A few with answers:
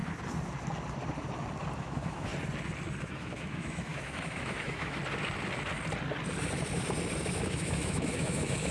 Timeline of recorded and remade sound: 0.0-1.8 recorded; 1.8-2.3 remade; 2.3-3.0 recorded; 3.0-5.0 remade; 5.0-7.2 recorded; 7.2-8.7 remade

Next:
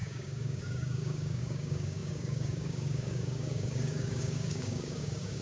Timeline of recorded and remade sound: 0.0-5.4 remade

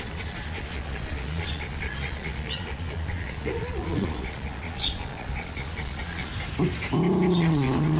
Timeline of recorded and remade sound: 0.0-6.3 remade; 6.3-7.3 recorded; 7.3-8.0 remade